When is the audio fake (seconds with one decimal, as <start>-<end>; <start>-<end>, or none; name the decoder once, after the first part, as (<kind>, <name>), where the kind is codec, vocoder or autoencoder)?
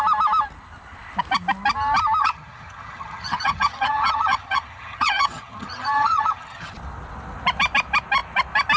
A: 2.2-6.7 (vocoder, HiFi-GAN)